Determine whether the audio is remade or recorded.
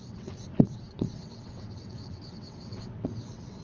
remade